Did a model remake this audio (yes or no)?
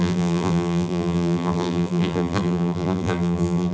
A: yes